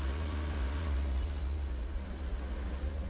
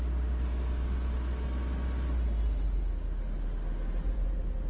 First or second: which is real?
second